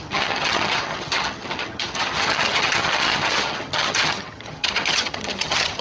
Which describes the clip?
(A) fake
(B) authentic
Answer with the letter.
A